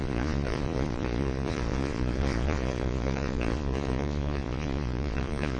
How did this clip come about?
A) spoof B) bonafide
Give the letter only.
A